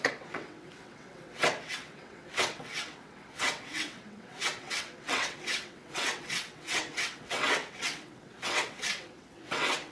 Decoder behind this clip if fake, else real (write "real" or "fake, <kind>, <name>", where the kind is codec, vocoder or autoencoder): fake, vocoder, WaveNeXt